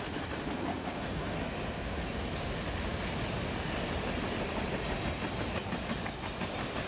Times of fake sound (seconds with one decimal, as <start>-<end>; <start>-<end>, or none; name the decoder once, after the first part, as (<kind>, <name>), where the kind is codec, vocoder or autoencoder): 0.7-1.4 (codec, SNAC)